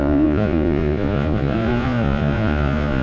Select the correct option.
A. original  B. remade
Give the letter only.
B